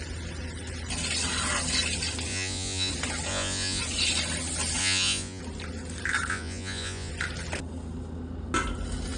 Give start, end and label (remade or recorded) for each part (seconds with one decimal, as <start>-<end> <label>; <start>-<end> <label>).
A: 0.0-2.3 recorded; 2.3-2.9 remade; 2.9-3.3 recorded; 3.3-3.8 remade; 3.8-4.8 recorded; 4.8-5.4 remade; 5.4-6.3 recorded; 6.3-7.1 remade; 7.1-9.2 recorded